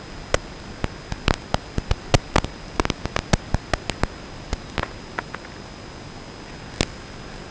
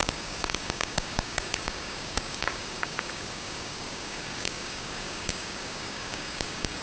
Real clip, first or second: first